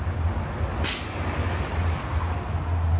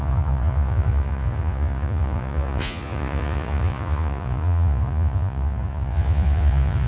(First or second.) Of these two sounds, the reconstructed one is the second